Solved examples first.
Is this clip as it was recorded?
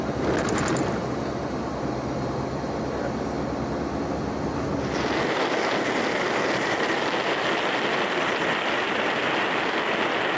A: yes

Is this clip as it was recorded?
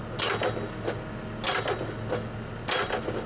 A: yes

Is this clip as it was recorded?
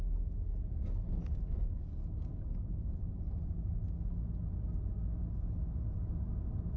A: yes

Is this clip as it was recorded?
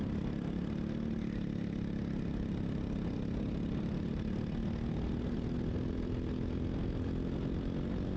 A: yes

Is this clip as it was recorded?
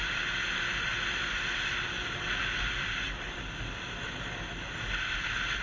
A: yes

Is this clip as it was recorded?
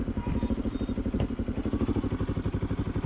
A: yes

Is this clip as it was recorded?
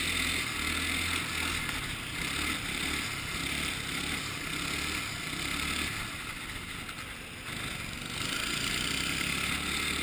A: yes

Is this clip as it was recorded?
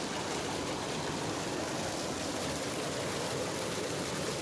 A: yes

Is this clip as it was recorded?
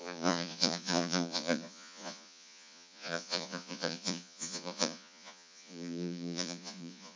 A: no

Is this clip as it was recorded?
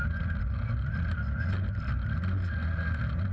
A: yes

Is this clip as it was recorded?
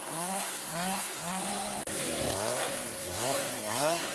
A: no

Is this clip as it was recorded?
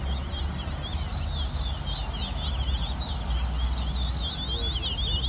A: yes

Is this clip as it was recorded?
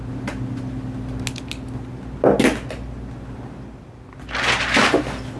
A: yes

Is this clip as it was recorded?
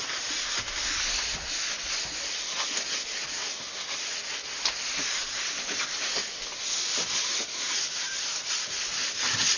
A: yes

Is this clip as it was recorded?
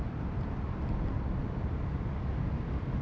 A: yes